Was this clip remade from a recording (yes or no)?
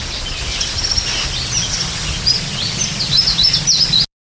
no